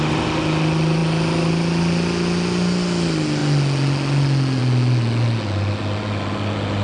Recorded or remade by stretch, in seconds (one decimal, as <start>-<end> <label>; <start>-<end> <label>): 0.0-6.8 recorded